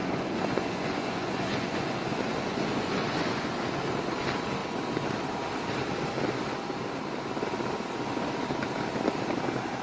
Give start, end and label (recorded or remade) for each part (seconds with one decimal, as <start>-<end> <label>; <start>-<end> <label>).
0.0-3.5 remade; 3.5-9.8 recorded